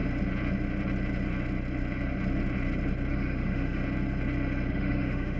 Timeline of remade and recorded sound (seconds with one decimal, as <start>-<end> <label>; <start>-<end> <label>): 0.0-3.1 recorded; 3.1-3.8 remade; 3.8-4.7 recorded; 4.7-5.4 remade